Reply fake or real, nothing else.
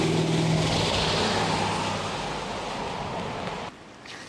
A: real